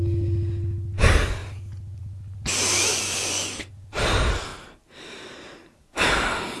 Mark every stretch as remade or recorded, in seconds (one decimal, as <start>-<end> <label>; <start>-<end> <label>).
0.0-2.9 recorded; 2.9-3.5 remade; 3.5-6.6 recorded